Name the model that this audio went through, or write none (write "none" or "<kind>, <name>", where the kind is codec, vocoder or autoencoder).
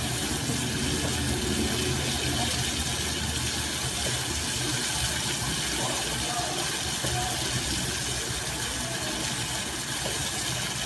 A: none